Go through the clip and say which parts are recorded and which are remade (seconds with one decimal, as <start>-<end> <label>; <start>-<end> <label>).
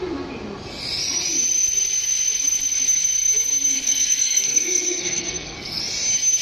0.0-3.7 recorded; 3.7-5.8 remade; 5.8-6.4 recorded